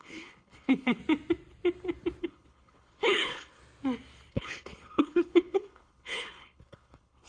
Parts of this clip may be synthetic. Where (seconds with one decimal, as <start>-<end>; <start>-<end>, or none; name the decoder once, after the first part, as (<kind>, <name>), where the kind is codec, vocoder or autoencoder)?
0.0-1.0 (codec, HILCodec); 2.2-3.6; 4.3-7.3